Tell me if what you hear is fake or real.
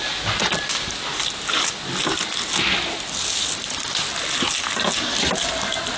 real